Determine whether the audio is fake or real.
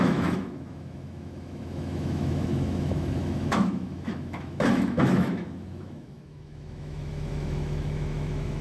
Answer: fake